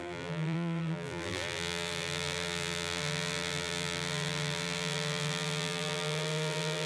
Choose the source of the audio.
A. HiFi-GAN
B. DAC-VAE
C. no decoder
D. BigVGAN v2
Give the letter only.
D